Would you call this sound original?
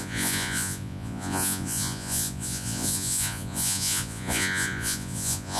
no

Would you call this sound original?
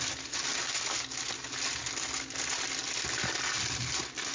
yes